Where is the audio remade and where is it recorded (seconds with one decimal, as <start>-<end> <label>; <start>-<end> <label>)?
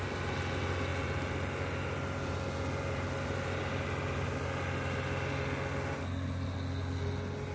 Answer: 0.0-7.5 recorded